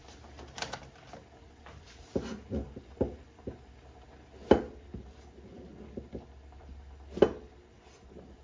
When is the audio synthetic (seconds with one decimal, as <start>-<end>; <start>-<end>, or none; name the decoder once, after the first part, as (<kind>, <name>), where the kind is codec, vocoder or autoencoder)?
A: none